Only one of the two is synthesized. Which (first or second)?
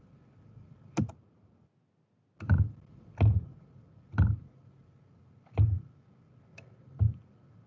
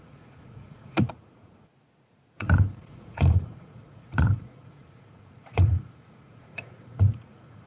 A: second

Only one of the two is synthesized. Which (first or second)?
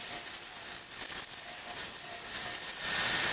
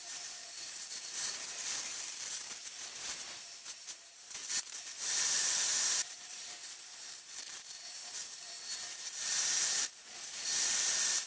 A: second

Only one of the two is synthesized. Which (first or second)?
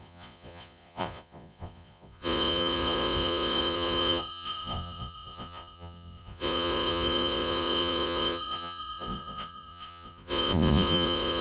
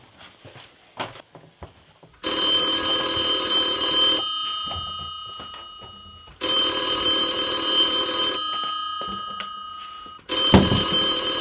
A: first